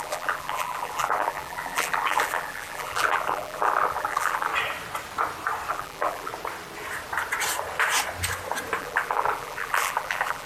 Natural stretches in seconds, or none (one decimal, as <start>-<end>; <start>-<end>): 4.5-5.7; 6.3-8.8